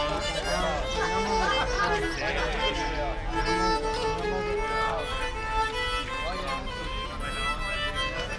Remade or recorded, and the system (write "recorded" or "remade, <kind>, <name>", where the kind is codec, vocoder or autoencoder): recorded